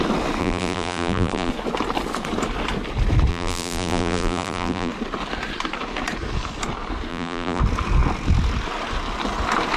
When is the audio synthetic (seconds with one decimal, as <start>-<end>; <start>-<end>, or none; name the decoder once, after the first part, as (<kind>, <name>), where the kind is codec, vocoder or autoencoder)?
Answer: 0.4-1.5 (vocoder, BigVGAN v2); 3.3-4.9; 7.1-7.6